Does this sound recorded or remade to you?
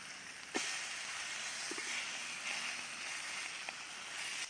recorded